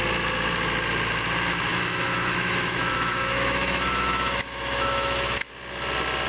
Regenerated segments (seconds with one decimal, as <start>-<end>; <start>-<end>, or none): 1.7-5.5